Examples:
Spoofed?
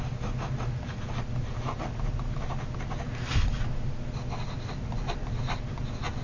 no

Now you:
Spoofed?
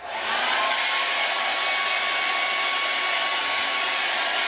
no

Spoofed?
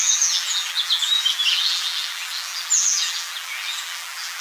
yes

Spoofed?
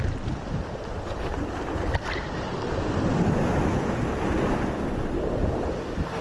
no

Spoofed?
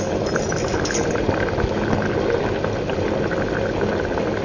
no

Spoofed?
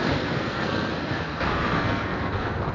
yes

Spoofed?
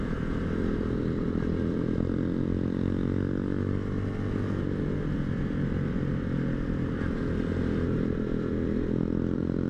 no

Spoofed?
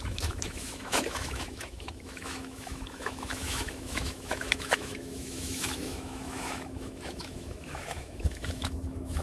yes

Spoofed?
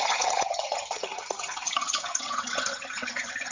yes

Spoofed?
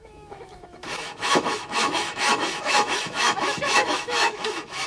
yes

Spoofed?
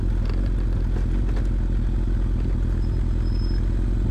no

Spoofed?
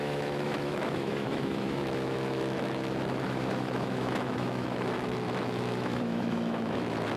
yes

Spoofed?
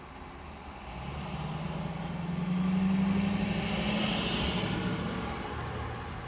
no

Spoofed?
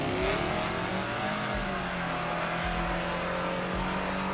no